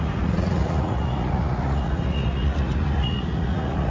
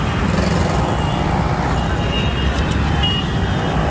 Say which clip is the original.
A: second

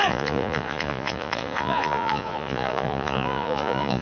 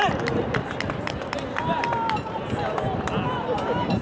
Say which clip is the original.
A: second